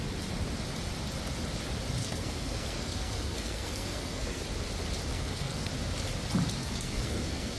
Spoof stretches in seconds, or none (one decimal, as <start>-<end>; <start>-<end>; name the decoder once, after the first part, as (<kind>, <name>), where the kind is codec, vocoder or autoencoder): 2.0-4.4 (codec, SNAC); 5.1-5.7; 6.6-7.6